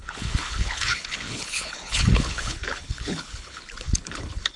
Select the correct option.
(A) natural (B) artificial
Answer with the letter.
B